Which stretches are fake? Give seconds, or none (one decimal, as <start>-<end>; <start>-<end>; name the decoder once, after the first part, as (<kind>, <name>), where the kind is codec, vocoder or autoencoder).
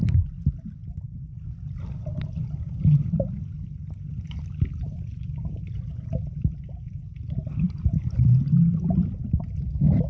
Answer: 0.0-0.8 (vocoder, BigVGAN v2); 5.9-7.8; 8.7-10.1